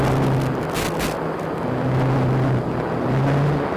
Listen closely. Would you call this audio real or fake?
real